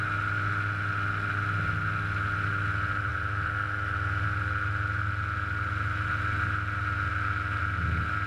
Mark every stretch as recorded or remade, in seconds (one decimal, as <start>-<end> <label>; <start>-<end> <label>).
0.0-8.3 recorded